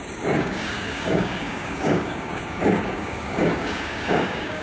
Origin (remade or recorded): remade